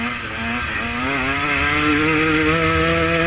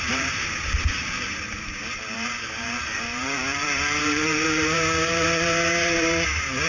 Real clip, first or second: first